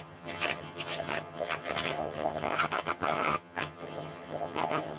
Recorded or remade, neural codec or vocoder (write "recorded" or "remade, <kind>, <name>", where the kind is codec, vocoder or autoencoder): remade, vocoder, HiFi-GAN